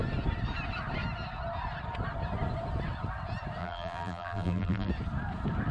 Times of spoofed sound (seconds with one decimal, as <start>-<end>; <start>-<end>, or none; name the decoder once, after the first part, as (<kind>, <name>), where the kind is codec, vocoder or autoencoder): 3.6-4.9 (vocoder, BigVGAN v2)